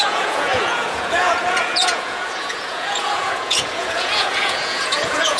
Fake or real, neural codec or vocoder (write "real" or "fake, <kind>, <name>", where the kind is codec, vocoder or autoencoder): fake, vocoder, Vocos